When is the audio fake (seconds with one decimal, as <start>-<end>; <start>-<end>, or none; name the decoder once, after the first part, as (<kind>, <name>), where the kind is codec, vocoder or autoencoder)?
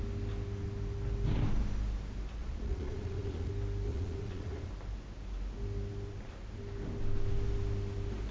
2.4-3.5 (vocoder, Vocos); 3.9-4.7